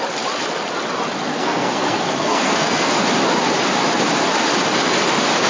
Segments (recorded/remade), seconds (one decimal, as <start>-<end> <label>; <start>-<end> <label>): 0.0-1.3 recorded; 1.3-3.0 remade; 3.0-5.5 recorded